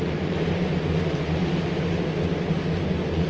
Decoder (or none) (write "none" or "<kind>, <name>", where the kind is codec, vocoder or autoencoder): none